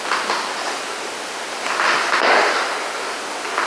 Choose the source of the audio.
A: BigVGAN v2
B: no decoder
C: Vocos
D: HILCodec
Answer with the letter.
B